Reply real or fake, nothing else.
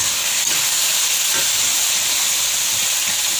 real